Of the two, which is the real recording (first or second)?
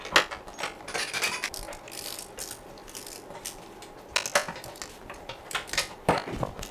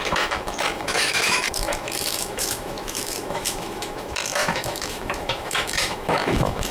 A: first